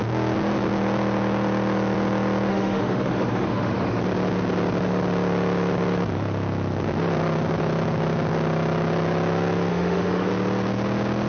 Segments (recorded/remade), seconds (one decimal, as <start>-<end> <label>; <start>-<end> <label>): 0.0-2.5 recorded; 2.5-4.0 remade; 4.0-9.7 recorded; 9.7-10.3 remade; 10.3-11.3 recorded